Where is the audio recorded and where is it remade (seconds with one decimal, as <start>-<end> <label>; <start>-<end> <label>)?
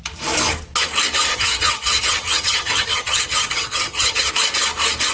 0.0-1.3 recorded; 1.3-4.3 remade; 4.3-5.1 recorded